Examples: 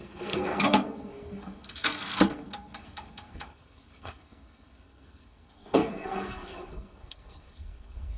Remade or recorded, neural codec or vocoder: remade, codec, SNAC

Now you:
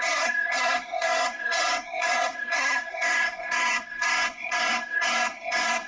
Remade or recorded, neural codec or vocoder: remade, codec, SNAC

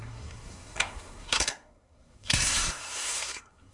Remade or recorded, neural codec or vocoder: remade, codec, SNAC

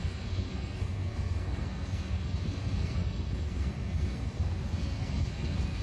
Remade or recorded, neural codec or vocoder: remade, codec, SNAC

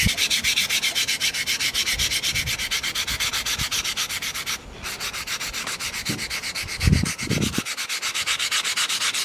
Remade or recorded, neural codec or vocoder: recorded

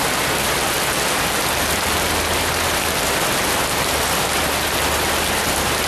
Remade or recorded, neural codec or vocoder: recorded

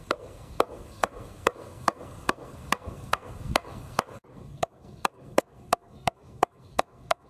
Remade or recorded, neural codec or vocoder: remade, codec, SNAC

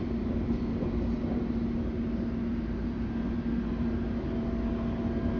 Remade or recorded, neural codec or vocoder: recorded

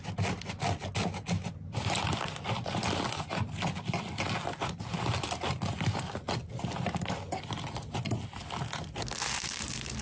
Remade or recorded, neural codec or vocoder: recorded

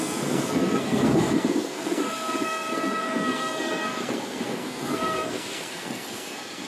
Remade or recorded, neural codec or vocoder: remade, codec, SNAC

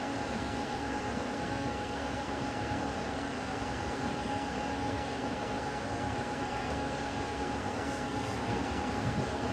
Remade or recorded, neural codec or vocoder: remade, codec, SNAC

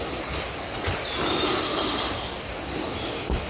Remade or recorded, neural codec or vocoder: recorded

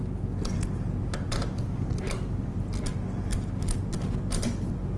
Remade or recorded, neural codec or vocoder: recorded